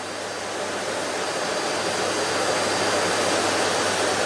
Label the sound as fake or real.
real